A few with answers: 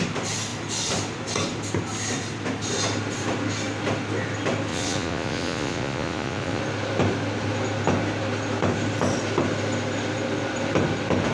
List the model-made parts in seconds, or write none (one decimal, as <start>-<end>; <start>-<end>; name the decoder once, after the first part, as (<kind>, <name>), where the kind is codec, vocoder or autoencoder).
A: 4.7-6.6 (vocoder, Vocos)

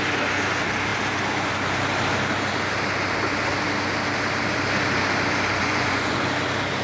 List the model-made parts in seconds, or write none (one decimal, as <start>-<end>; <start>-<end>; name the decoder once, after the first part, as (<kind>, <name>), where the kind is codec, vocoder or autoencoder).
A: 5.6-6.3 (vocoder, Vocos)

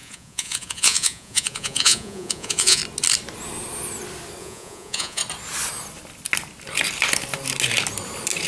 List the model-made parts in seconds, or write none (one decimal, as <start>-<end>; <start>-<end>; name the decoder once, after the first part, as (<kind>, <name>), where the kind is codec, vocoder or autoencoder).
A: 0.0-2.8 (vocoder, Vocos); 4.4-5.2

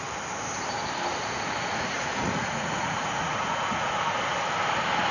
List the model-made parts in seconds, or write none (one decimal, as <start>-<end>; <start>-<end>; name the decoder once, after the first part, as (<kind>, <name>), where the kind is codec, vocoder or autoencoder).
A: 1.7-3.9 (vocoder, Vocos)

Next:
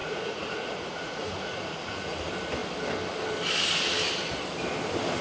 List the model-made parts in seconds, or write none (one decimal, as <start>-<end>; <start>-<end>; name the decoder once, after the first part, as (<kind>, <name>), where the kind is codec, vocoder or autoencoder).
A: 0.0-2.2 (vocoder, Vocos)